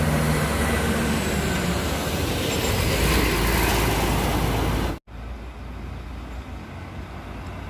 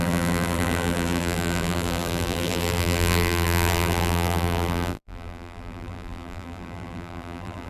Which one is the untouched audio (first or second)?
first